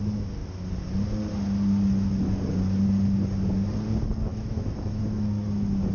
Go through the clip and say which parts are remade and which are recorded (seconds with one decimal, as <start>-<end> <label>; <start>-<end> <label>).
0.0-4.3 recorded; 4.3-5.0 remade; 5.0-5.9 recorded